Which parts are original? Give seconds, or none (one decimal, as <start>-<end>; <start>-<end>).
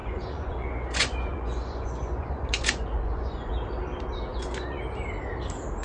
3.5-4.3; 4.8-5.8